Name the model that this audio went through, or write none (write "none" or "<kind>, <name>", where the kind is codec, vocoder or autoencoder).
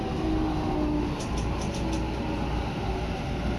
none